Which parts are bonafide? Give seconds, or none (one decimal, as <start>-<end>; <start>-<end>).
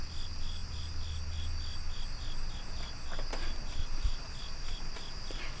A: 0.0-3.8